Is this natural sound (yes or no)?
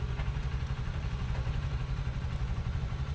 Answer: no